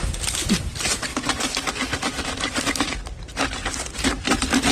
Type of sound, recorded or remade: recorded